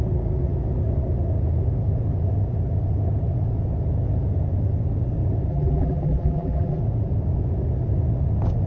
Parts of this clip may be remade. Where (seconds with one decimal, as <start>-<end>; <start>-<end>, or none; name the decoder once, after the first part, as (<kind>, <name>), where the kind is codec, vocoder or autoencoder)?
5.5-6.8 (vocoder, BigVGAN v2)